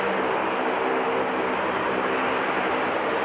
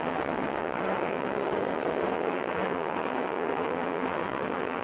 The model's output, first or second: second